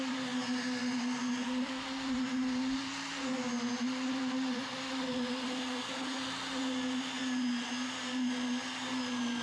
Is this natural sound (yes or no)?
yes